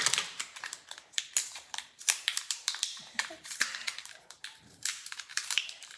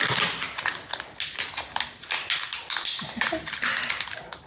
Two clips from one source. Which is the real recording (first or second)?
second